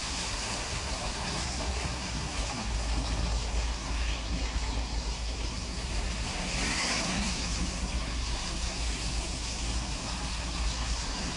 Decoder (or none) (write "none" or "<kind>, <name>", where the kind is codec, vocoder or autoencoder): codec, SNAC